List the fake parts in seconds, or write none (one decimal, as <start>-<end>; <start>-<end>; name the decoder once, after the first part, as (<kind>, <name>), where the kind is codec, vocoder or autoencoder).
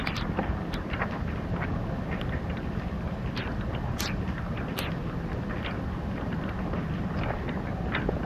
none